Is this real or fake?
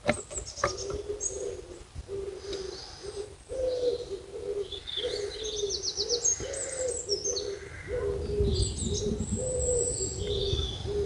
real